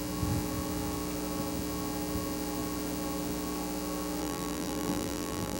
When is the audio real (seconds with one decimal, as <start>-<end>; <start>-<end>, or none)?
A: 0.0-4.2

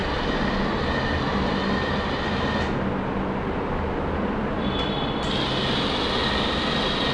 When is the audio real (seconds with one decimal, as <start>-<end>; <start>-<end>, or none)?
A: 0.0-7.1

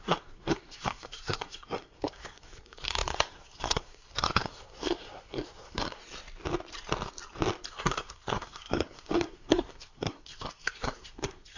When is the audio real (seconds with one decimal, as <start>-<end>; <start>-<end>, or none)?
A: 6.0-7.7